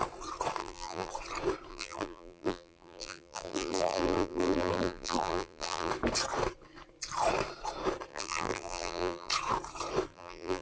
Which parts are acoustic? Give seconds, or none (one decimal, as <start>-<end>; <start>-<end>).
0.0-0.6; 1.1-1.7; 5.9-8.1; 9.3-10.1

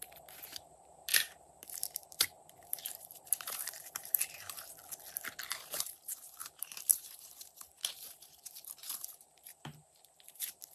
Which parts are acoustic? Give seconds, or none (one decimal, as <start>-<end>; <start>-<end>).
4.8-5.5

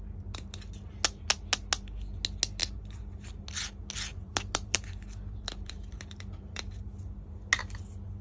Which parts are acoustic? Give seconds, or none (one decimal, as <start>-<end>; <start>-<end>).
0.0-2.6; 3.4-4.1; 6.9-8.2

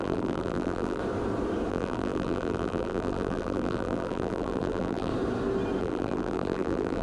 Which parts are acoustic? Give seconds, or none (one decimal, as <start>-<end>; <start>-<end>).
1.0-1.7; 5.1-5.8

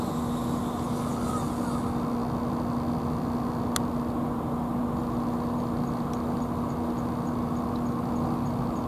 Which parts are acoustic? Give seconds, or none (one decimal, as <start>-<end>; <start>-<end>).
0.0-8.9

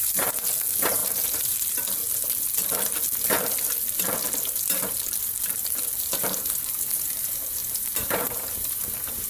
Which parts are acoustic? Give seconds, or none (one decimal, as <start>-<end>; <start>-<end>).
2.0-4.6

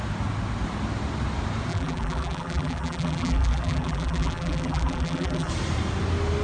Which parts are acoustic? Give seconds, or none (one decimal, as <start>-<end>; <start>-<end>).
0.0-1.7; 5.5-6.4